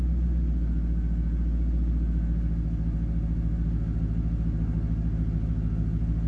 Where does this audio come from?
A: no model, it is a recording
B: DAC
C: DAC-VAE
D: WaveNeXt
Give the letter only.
A